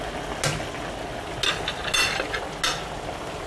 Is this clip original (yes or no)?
yes